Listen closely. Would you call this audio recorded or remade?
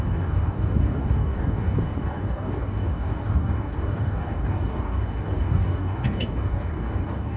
remade